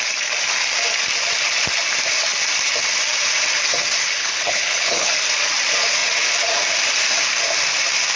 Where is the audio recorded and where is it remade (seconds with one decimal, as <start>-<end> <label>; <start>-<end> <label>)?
0.0-4.2 recorded; 4.2-5.1 remade; 5.1-8.2 recorded